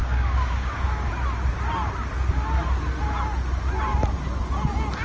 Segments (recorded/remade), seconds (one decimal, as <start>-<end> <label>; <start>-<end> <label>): 0.0-1.1 remade; 1.1-5.0 recorded